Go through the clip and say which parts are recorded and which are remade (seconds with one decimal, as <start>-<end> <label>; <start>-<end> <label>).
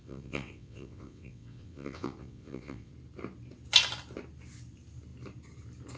0.0-2.9 remade; 2.9-6.0 recorded